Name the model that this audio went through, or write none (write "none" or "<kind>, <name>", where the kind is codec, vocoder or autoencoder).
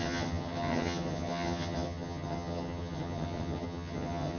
vocoder, HiFi-GAN